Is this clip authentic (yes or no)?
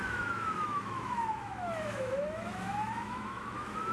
no